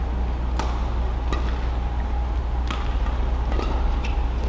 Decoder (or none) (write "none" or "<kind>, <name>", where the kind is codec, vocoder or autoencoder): none